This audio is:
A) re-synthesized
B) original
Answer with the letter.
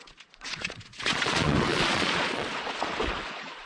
A